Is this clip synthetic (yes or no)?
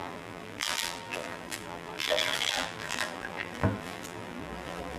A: yes